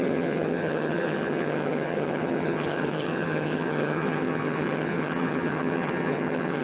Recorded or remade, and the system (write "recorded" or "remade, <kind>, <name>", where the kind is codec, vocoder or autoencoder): remade, vocoder, HiFi-GAN